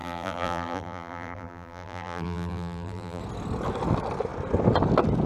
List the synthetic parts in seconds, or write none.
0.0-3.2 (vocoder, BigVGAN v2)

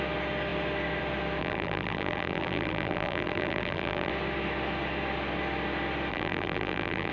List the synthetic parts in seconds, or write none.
1.4-4.1 (vocoder, BigVGAN v2); 6.1-7.1